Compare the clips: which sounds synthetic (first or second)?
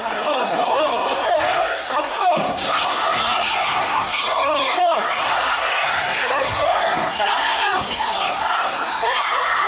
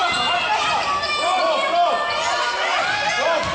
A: first